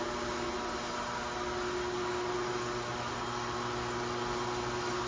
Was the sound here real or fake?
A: real